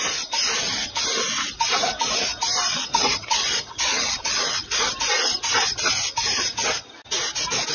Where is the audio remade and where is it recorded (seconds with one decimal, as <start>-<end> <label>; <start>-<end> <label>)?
0.0-2.7 recorded; 2.7-4.9 remade; 4.9-7.7 recorded